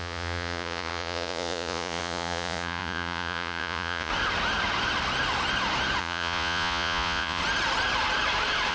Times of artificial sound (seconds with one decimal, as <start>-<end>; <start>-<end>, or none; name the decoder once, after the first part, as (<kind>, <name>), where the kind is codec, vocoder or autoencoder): 0.0-4.1 (vocoder, Vocos); 6.0-7.4